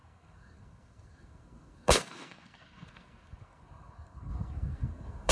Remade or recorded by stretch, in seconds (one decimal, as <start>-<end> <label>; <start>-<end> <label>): 0.0-5.3 remade